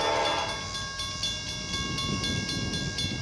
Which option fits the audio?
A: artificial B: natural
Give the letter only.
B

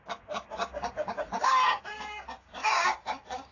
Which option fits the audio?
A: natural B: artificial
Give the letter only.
B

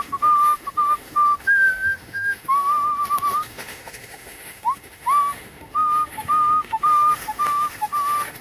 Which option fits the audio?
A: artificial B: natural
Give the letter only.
A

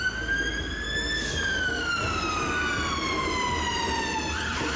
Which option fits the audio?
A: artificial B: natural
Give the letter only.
B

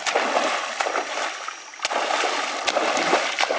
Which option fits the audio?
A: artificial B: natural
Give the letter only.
B